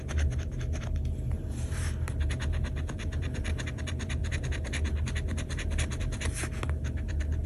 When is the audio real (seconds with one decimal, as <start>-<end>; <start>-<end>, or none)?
0.0-7.5